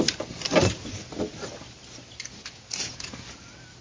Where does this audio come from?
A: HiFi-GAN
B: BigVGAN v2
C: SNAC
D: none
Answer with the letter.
D